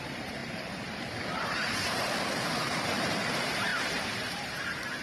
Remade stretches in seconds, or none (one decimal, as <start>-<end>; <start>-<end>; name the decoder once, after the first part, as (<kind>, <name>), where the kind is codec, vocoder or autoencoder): 0.0-3.7 (vocoder, BigVGAN v2)